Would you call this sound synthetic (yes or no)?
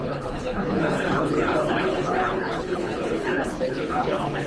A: yes